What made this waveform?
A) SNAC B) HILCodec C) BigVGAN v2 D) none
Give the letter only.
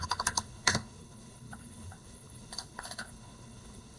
B